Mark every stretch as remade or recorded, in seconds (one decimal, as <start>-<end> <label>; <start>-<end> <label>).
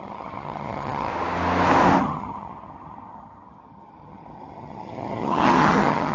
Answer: 0.0-1.1 remade; 1.1-2.0 recorded; 2.0-6.1 remade